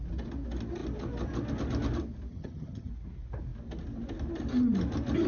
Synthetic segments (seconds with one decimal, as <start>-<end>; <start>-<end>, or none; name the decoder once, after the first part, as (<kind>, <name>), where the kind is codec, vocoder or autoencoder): 2.3-2.9 (vocoder, HiFi-GAN)